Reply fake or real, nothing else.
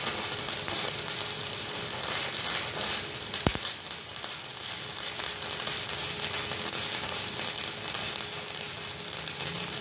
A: real